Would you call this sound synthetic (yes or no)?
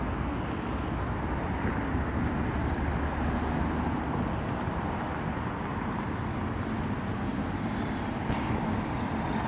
no